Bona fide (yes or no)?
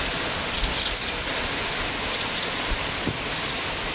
yes